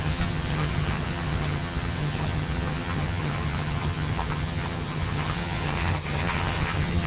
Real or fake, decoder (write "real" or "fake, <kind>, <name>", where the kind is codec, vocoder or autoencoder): fake, vocoder, HiFi-GAN